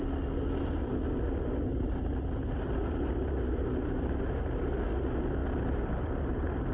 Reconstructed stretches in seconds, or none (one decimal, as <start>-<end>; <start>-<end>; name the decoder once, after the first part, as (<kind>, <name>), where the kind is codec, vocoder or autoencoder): none